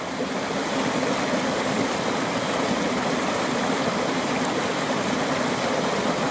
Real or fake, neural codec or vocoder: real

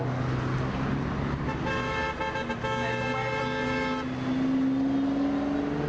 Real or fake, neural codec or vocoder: real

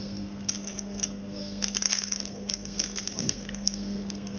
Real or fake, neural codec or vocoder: fake, codec, SNAC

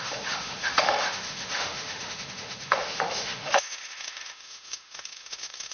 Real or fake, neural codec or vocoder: fake, autoencoder, DAC-VAE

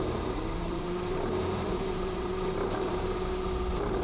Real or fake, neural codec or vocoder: fake, vocoder, BigVGAN v2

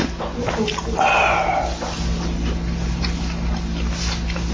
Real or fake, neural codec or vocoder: real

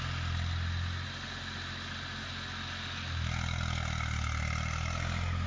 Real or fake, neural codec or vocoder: real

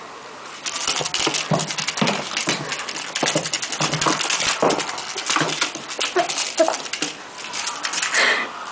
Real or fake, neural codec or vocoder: real